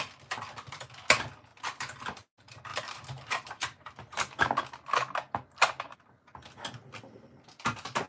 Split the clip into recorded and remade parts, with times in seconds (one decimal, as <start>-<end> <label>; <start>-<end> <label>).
0.0-1.5 recorded; 1.5-2.0 remade; 2.0-2.7 recorded; 2.7-4.4 remade; 4.4-8.1 recorded